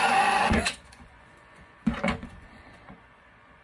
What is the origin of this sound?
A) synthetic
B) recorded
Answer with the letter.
A